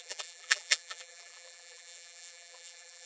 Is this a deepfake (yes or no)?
yes